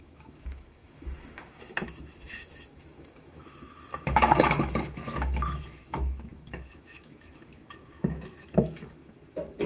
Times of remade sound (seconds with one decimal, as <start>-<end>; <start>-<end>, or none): 0.0-9.7